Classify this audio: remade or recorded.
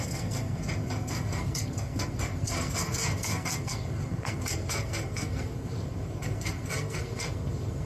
remade